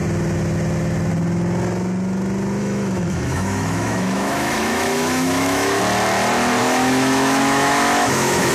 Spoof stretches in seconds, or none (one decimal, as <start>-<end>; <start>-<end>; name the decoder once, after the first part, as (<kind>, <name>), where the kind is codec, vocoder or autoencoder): 2.6-5.8 (autoencoder, DAC-VAE); 6.6-8.5